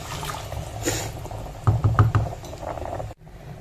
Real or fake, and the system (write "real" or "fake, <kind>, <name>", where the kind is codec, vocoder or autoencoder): real